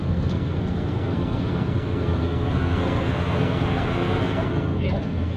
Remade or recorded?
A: remade